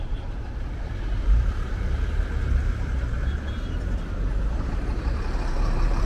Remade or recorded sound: remade